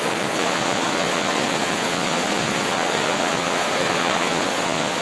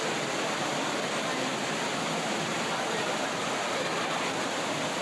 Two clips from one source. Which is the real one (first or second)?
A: second